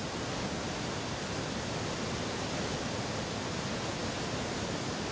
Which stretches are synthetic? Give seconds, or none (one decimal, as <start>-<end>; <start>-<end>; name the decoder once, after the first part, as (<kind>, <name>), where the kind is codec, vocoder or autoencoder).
none